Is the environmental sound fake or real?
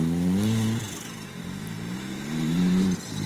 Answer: real